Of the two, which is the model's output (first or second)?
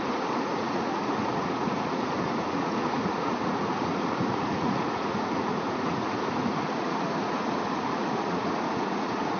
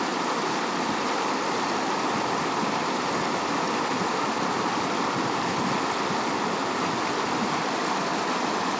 first